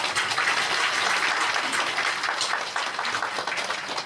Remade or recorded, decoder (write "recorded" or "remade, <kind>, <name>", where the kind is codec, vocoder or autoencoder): recorded